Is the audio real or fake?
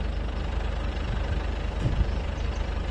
real